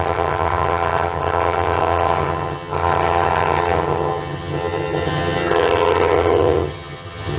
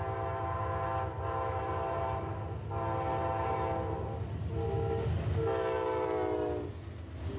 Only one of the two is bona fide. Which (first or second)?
second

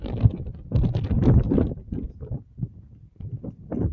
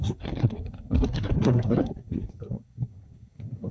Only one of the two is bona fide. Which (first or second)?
first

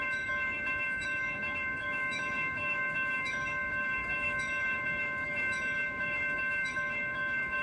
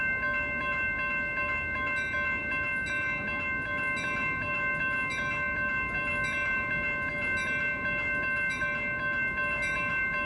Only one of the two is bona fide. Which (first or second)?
second